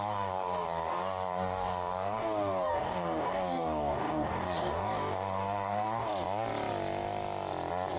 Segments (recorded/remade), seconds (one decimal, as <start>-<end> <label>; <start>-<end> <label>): 0.0-6.1 remade; 6.1-8.0 recorded